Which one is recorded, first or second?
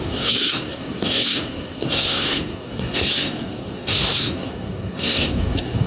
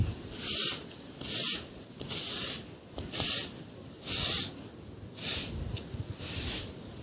second